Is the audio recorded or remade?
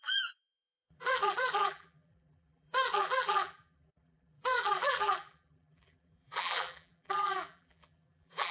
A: remade